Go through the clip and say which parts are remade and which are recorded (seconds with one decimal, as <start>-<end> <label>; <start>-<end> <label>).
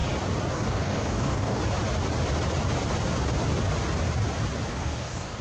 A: 0.0-0.5 recorded; 0.5-1.6 remade; 1.6-4.7 recorded; 4.7-5.4 remade